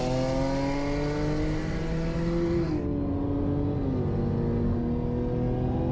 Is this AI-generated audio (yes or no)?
no